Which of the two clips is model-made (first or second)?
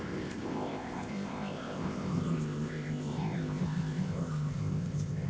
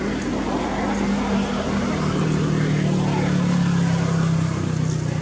first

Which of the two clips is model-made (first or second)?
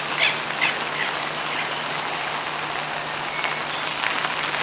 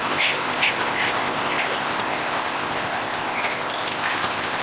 second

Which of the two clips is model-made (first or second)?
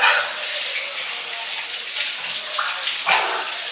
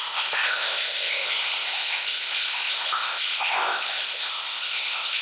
second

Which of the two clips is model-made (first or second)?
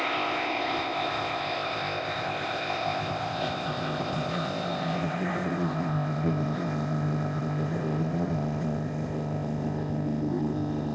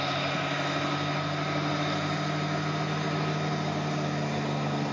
first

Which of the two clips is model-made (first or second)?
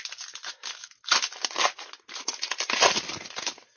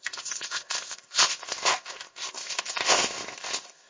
second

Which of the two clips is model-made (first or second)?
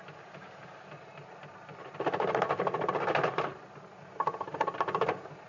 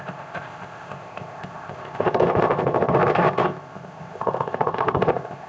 second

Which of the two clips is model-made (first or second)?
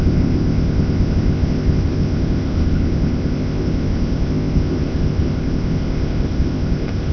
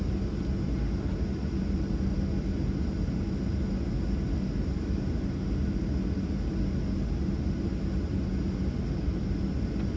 first